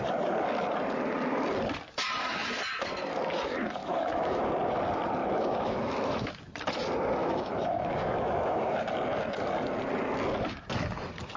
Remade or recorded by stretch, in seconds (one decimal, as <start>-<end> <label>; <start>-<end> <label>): 0.0-3.8 recorded; 3.8-4.5 remade; 4.5-5.2 recorded; 5.2-6.4 remade; 6.4-7.2 recorded; 7.2-8.7 remade; 8.7-11.4 recorded